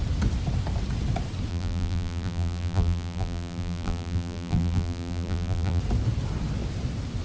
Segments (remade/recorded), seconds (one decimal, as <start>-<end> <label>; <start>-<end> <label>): 0.0-1.5 recorded; 1.5-5.8 remade; 5.8-7.2 recorded